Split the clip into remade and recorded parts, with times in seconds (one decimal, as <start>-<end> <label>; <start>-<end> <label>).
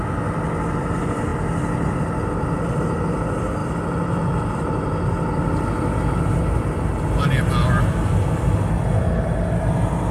0.0-10.1 recorded